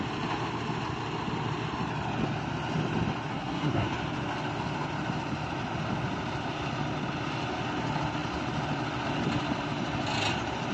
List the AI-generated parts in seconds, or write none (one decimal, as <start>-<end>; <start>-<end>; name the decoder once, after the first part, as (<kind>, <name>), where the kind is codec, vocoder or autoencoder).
3.3-3.9 (codec, SNAC)